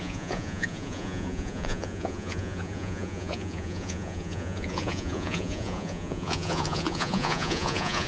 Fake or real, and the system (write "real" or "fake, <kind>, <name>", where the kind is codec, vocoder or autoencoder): fake, vocoder, Vocos